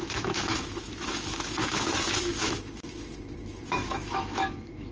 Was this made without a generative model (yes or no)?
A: no